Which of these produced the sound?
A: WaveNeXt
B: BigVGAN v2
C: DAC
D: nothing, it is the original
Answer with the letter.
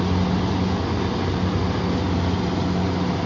D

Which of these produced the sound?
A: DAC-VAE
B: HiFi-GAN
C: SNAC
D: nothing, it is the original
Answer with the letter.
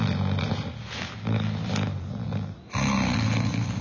D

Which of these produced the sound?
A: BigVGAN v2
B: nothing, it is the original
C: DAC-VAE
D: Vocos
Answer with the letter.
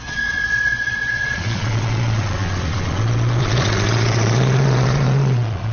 D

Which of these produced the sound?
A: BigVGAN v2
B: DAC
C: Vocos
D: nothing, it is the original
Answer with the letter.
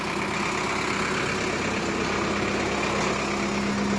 D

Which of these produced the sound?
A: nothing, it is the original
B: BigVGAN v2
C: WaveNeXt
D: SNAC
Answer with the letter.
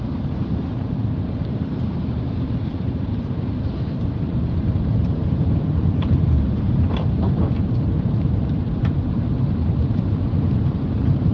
B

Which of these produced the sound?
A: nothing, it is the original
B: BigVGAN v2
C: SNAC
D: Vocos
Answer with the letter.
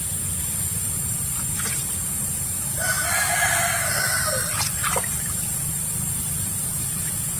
B